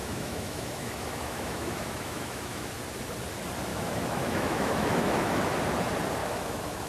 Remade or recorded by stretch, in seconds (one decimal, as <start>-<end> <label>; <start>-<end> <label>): 0.0-2.7 remade; 2.7-3.7 recorded; 3.7-5.5 remade; 5.5-6.2 recorded; 6.2-6.9 remade

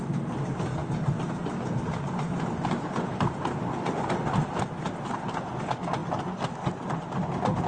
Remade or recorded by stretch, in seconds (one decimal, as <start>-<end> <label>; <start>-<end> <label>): 0.0-7.7 recorded